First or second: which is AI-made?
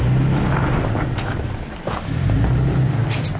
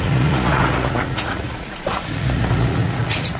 second